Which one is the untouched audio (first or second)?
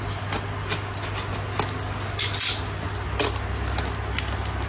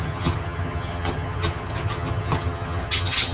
first